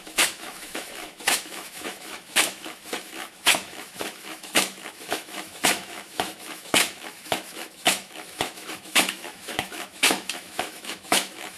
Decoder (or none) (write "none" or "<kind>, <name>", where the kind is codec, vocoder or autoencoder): autoencoder, DAC-VAE